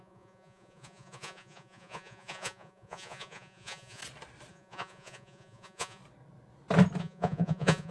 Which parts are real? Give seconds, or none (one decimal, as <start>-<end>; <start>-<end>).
4.0-4.5; 6.0-7.0